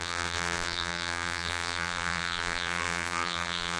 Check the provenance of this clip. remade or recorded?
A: remade